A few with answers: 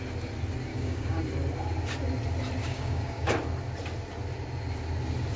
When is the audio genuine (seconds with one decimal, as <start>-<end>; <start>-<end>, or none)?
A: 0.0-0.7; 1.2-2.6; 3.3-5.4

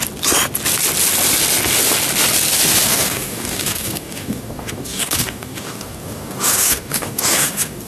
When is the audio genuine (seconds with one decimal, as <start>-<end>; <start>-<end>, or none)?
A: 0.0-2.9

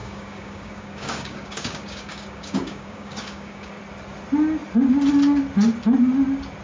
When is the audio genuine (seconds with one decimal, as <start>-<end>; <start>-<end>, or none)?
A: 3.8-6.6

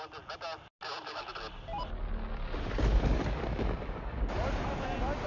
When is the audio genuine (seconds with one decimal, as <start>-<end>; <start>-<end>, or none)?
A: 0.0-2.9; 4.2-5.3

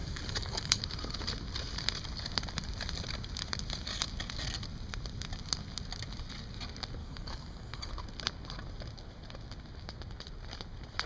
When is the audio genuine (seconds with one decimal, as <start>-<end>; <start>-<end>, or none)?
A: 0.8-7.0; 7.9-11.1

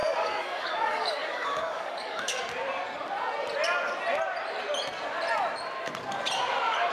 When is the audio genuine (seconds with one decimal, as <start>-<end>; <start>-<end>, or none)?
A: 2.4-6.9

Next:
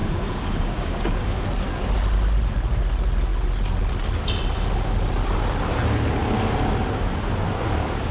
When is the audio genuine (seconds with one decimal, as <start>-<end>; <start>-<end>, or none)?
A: 1.4-8.1